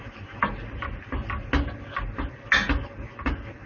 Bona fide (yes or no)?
yes